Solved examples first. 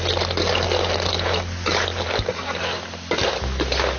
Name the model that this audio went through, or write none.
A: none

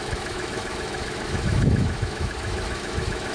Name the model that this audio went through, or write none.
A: autoencoder, DAC-VAE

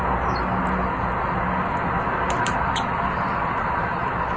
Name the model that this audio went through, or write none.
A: none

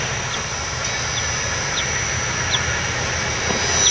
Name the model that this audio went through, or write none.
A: none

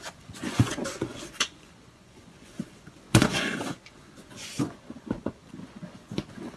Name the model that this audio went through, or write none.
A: vocoder, Vocos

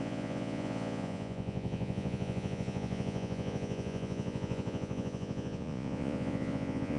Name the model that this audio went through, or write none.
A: vocoder, Vocos